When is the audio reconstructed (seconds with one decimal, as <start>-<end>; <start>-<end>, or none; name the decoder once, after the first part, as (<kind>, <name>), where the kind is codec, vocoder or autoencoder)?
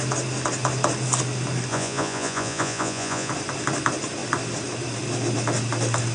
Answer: 1.7-3.3 (vocoder, Vocos)